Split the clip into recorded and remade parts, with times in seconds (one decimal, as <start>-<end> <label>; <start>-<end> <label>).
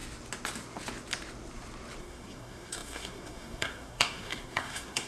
0.0-2.0 recorded; 2.0-5.1 remade